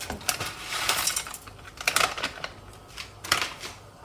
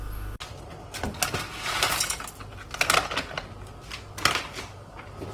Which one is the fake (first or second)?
first